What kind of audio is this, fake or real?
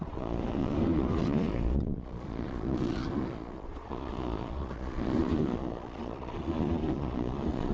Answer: fake